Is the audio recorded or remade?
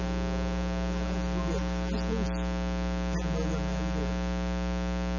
recorded